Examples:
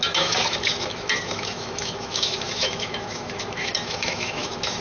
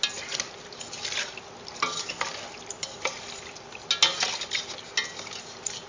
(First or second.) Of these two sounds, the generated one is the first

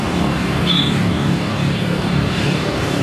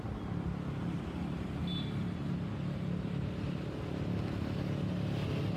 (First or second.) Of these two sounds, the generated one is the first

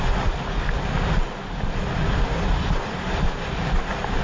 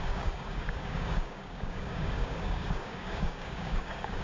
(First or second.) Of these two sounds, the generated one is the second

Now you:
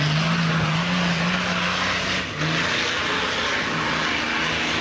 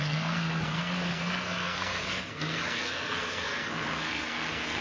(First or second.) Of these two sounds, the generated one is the second